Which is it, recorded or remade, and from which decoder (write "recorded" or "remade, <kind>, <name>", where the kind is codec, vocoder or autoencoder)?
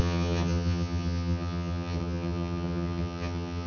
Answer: remade, vocoder, HiFi-GAN